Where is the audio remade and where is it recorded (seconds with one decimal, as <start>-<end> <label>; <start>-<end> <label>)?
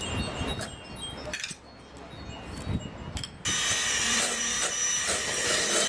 0.0-0.5 remade; 0.5-4.0 recorded; 4.0-5.9 remade